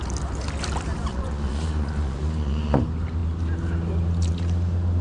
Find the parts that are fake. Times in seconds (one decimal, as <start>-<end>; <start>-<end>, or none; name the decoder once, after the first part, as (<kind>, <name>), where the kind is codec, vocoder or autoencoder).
1.1-2.8 (vocoder, Vocos)